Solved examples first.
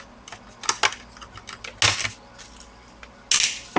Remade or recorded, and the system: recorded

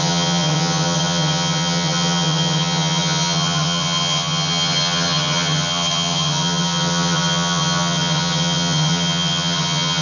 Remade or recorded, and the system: remade, vocoder, HiFi-GAN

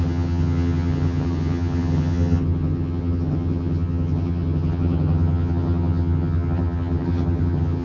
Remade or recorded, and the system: remade, vocoder, HiFi-GAN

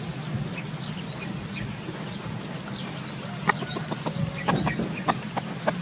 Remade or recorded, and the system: recorded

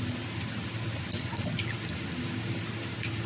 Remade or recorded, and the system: recorded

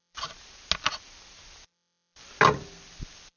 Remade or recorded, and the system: recorded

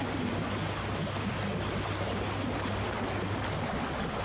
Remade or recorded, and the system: recorded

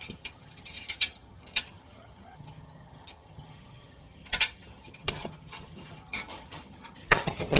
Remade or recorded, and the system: remade, vocoder, HiFi-GAN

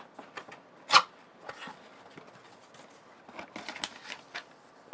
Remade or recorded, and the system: recorded